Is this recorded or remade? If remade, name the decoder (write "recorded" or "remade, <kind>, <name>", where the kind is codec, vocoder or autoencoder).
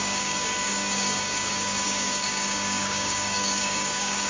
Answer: remade, codec, DAC